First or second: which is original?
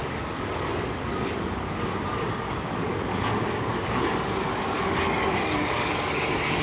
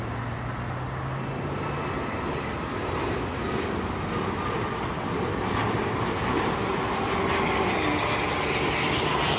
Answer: second